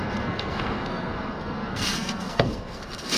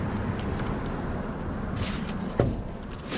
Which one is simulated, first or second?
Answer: first